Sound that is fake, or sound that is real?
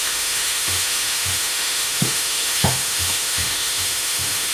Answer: fake